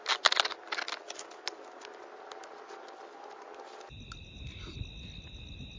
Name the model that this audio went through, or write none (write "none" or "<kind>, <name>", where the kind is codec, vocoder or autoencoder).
none